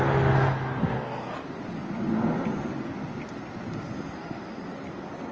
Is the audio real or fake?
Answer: real